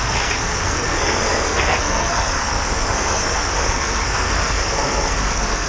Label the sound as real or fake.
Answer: fake